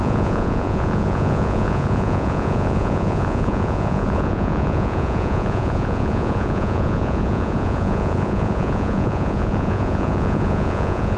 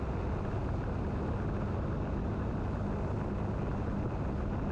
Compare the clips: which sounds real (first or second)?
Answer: second